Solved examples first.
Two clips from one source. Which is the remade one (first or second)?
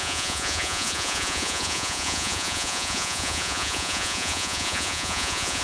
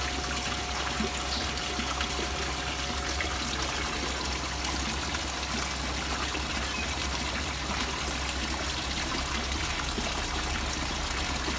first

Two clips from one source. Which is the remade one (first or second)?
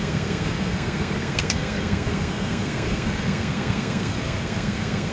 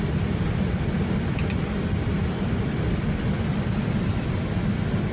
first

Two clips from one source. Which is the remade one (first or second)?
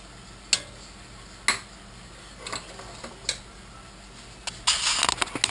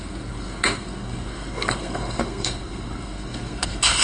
second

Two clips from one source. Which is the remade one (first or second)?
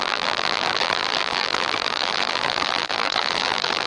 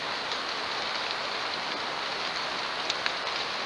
first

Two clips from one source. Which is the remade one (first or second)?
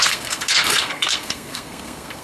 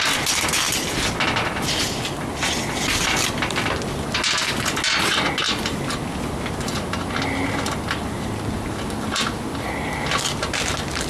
first